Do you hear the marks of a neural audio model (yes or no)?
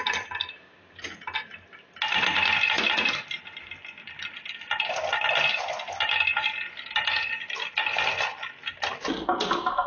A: no